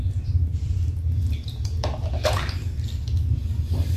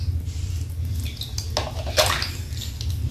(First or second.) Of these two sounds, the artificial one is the first